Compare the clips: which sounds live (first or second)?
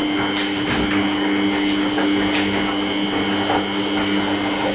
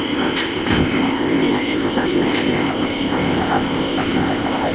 first